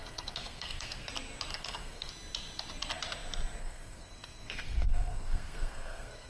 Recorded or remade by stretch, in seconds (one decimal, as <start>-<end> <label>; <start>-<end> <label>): 0.0-1.1 remade; 1.1-1.5 recorded; 1.5-2.1 remade; 2.1-3.6 recorded; 3.6-6.3 remade